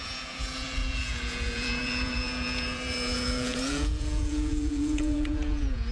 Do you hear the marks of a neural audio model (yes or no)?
yes